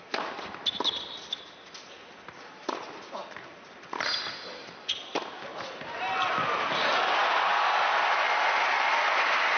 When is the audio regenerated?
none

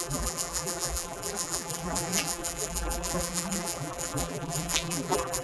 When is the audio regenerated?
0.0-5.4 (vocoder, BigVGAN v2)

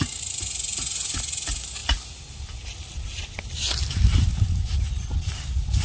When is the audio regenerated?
none

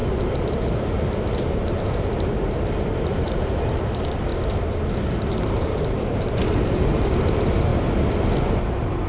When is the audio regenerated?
0.0-4.3 (vocoder, BigVGAN v2); 5.0-7.7; 8.4-9.1

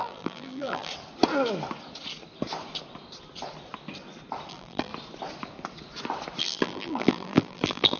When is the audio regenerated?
0.0-0.9 (vocoder, BigVGAN v2); 4.5-4.9; 6.4-8.0